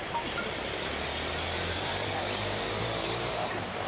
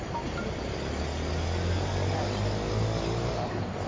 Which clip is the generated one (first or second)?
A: first